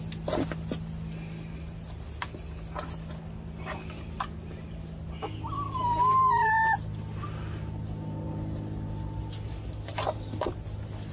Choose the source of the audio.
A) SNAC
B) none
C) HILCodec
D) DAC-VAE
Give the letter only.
B